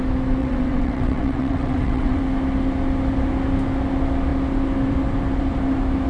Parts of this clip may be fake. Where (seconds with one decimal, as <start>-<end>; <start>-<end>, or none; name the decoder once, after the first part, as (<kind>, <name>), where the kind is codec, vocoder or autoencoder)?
0.4-2.2 (vocoder, WaveNeXt)